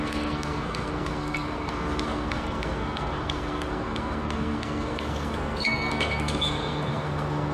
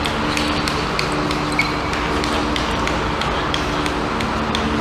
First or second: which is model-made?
first